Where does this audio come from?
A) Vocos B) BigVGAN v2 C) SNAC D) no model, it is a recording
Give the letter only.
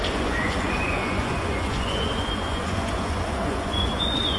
A